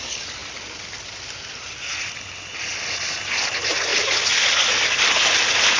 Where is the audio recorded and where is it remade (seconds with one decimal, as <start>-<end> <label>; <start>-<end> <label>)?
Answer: 0.0-5.8 recorded